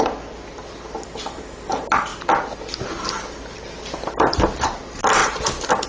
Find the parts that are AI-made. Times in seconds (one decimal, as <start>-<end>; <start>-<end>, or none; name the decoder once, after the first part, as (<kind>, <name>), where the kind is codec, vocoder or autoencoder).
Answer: none